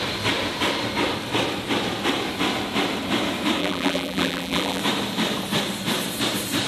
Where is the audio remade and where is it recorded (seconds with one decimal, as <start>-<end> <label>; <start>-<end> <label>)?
0.0-3.6 recorded; 3.6-4.8 remade; 4.8-6.7 recorded